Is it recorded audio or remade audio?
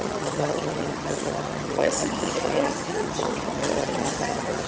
remade